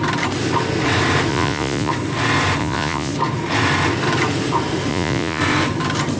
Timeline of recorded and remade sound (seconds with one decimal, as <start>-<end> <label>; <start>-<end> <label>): 0.0-1.3 recorded; 1.3-1.9 remade; 1.9-2.6 recorded; 2.6-3.1 remade; 3.1-4.9 recorded; 4.9-5.4 remade; 5.4-6.2 recorded